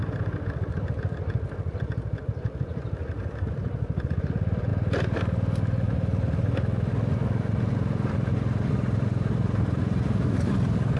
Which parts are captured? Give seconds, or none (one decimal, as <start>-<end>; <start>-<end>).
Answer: 0.0-2.2; 4.7-6.9